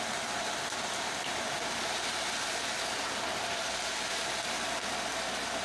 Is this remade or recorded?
recorded